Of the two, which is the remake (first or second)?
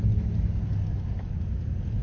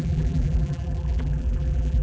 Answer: second